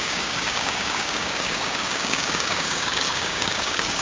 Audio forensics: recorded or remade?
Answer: remade